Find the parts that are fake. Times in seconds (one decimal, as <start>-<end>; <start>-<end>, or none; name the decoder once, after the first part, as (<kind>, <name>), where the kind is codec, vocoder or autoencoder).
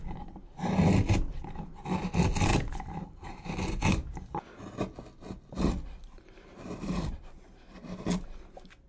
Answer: 2.5-3.8 (vocoder, BigVGAN v2); 6.0-7.2